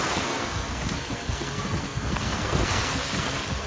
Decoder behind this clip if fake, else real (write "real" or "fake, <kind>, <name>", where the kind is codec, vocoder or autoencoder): fake, codec, SNAC